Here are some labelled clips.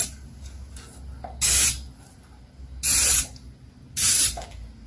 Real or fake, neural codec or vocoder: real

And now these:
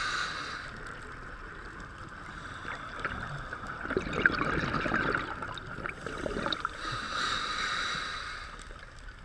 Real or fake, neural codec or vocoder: fake, vocoder, BigVGAN v2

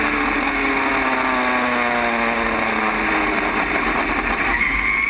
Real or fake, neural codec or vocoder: real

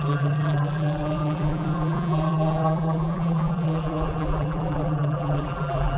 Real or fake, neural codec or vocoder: fake, vocoder, BigVGAN v2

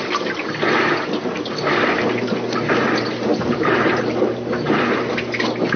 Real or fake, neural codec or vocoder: real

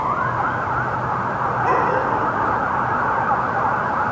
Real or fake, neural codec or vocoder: real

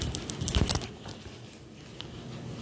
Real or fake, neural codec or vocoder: real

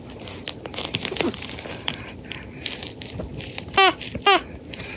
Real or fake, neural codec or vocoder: real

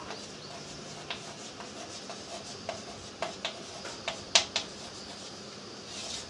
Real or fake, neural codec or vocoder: real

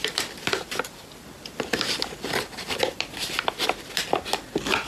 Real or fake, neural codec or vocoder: fake, vocoder, BigVGAN v2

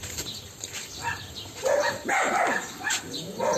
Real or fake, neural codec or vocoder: fake, vocoder, BigVGAN v2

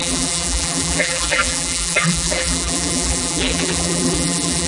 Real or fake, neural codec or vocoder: fake, vocoder, BigVGAN v2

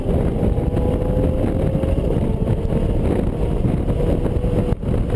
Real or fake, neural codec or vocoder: real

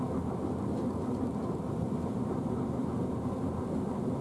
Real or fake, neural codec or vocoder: real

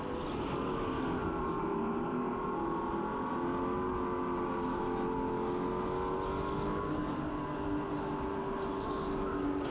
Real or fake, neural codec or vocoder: real